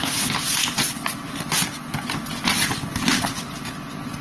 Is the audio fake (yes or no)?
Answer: no